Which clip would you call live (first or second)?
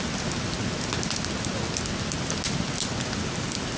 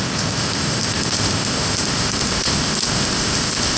first